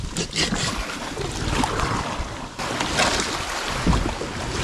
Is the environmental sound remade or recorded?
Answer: recorded